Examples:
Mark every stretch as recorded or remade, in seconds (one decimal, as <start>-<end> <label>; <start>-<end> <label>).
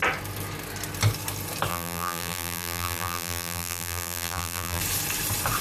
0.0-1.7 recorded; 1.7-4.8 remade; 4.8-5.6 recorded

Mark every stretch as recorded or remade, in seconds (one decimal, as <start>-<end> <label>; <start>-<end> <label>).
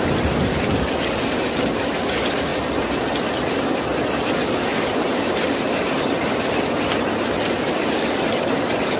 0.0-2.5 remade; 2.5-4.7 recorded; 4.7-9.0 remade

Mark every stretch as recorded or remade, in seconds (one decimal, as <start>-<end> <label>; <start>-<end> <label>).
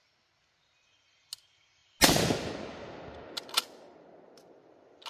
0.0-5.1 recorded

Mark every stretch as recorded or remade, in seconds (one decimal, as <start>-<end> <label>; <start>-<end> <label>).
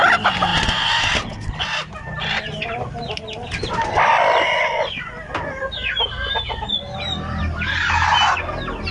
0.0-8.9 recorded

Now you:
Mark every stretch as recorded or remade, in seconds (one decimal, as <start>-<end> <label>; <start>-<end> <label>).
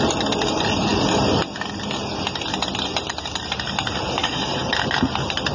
0.0-5.5 recorded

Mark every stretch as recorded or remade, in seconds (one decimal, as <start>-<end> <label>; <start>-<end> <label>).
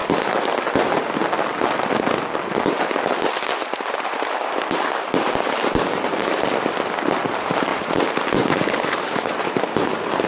0.0-7.7 recorded; 7.7-9.6 remade; 9.6-10.3 recorded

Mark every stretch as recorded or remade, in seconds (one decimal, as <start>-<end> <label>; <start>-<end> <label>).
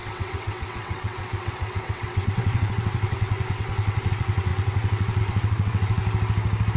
0.0-6.0 remade; 6.0-6.8 recorded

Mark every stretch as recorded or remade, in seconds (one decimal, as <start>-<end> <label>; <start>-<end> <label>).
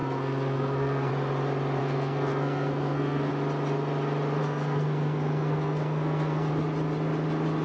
0.0-1.1 remade; 1.1-1.8 recorded; 1.8-3.3 remade; 3.3-4.4 recorded; 4.4-6.5 remade; 6.5-7.6 recorded